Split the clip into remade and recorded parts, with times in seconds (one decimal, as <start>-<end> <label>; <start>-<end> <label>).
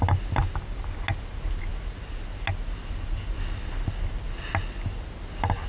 0.0-5.7 recorded